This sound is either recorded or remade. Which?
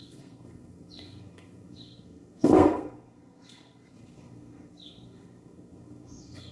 remade